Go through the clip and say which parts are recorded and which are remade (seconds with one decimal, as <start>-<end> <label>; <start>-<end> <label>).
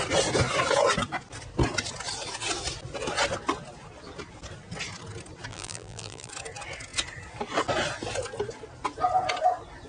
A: 0.0-5.5 recorded; 5.5-6.3 remade; 6.3-9.9 recorded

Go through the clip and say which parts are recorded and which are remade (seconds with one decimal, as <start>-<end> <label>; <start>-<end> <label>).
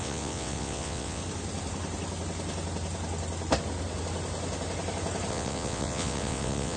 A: 0.0-1.2 remade; 1.2-5.3 recorded; 5.3-6.8 remade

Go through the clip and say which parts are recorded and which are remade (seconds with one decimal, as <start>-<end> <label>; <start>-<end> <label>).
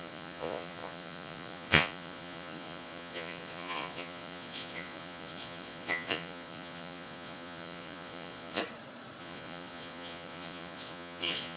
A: 0.0-8.6 remade; 8.6-9.2 recorded; 9.2-11.6 remade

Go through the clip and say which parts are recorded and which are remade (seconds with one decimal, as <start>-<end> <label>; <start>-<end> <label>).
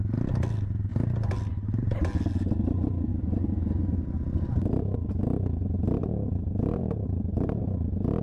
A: 0.0-6.0 recorded; 6.0-7.6 remade; 7.6-8.2 recorded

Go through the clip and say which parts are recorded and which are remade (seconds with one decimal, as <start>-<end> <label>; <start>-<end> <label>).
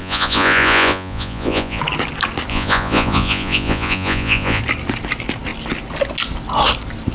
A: 0.0-1.8 remade; 1.8-2.5 recorded; 2.5-4.6 remade; 4.6-7.1 recorded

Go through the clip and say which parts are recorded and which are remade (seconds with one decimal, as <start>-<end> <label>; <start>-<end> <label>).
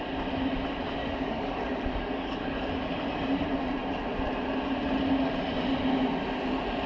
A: 0.0-1.0 recorded; 1.0-2.7 remade; 2.7-6.9 recorded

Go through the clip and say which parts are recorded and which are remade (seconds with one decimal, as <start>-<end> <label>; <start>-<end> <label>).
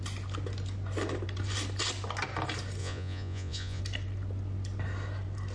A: 0.0-2.8 recorded; 2.8-3.8 remade; 3.8-5.5 recorded